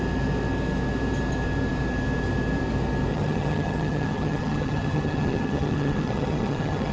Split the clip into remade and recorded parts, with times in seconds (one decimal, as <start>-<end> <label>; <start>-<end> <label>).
0.0-3.1 recorded; 3.1-6.9 remade